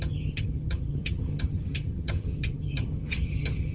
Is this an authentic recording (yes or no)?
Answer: no